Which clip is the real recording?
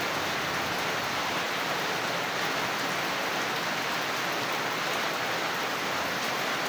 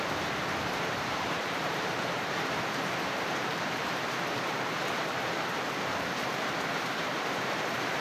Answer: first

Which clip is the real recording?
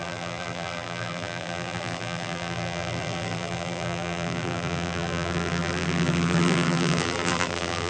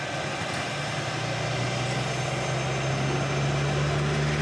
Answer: second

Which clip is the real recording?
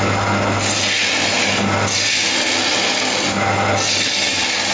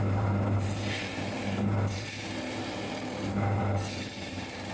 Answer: first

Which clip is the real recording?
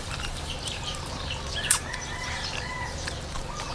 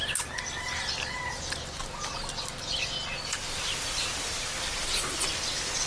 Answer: second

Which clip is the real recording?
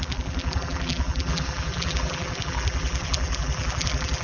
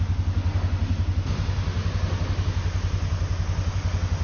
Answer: second